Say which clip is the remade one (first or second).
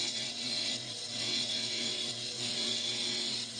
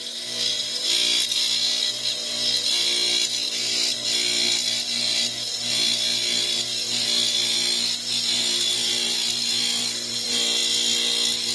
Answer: first